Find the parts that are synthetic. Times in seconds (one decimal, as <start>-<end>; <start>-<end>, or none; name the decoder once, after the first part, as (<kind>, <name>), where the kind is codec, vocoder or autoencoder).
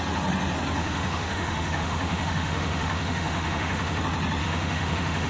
0.8-4.0 (autoencoder, DAC-VAE); 4.4-5.3